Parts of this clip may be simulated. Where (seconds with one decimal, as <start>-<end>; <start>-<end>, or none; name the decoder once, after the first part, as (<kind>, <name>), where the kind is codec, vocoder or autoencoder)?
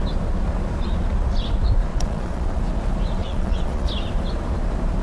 1.9-2.6 (vocoder, Vocos); 3.2-3.9